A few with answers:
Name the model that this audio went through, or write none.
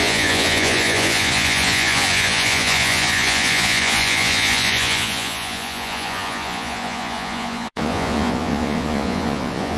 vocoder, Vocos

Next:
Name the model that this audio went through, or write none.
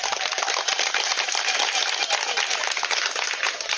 none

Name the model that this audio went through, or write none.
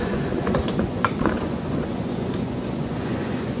vocoder, Vocos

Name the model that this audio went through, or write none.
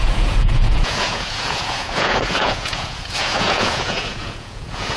vocoder, Vocos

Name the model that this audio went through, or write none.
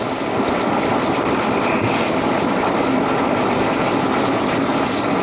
none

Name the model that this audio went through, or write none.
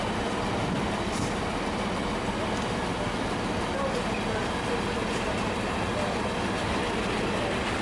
none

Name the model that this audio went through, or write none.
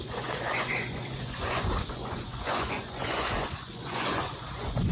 vocoder, Vocos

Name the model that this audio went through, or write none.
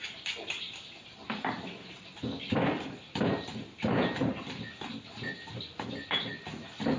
none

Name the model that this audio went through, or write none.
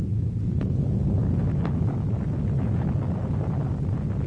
none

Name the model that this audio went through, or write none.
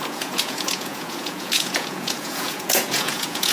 vocoder, Vocos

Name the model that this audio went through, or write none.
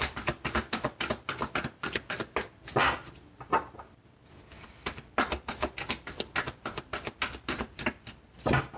none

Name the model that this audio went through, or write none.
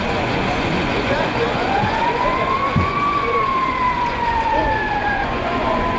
vocoder, Vocos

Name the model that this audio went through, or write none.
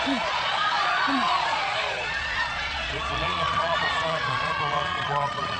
vocoder, Vocos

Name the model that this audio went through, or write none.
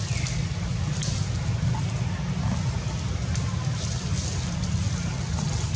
none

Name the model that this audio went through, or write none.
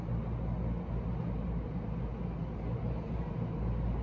none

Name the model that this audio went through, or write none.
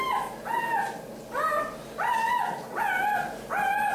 none